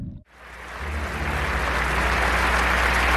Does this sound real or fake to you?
real